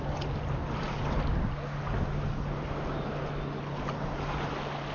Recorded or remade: recorded